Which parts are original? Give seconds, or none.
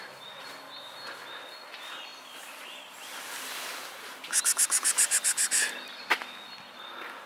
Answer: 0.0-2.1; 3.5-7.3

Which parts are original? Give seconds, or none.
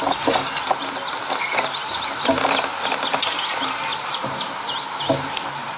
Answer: 0.0-3.9; 4.5-5.8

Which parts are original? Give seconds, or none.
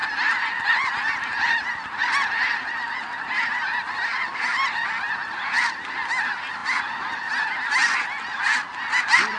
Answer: 0.0-9.4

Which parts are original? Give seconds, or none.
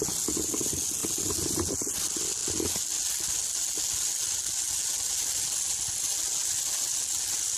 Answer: 0.0-7.6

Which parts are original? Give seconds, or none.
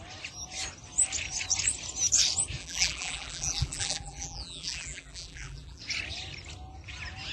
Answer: 0.0-2.6; 5.8-7.3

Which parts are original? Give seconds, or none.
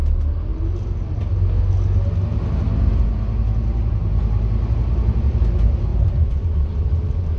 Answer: 0.0-0.5; 1.2-5.9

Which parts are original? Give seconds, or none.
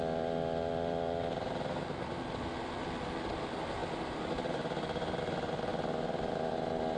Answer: 0.0-7.0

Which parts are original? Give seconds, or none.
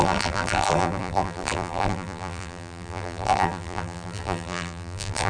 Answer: none